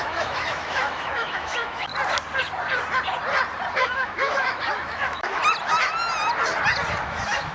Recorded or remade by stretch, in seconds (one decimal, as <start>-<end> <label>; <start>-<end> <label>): 0.0-1.9 remade; 1.9-3.7 recorded; 3.7-5.4 remade; 5.4-7.0 recorded; 7.0-7.5 remade